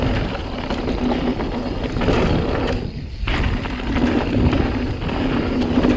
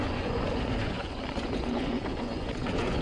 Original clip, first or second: first